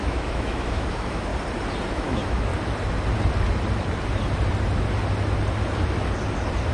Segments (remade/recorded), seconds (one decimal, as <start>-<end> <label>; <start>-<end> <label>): 0.0-1.3 remade; 1.3-1.9 recorded; 1.9-2.5 remade; 2.5-6.7 recorded